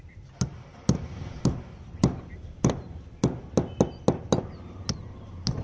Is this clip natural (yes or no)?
yes